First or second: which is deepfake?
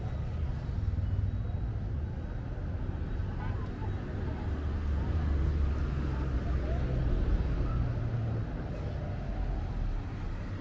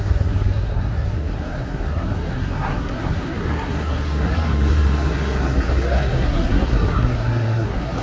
second